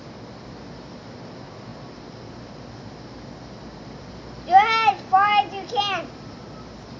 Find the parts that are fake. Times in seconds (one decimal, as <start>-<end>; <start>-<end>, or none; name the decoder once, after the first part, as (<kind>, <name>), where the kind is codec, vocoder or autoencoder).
none